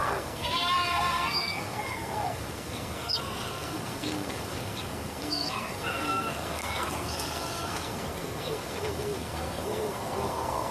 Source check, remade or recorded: remade